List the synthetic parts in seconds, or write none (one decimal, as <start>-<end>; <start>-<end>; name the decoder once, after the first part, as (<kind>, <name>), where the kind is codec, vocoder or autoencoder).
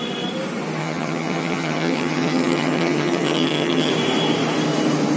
0.8-3.9 (vocoder, HiFi-GAN)